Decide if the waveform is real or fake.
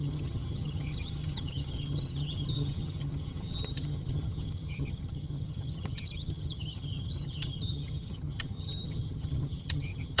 fake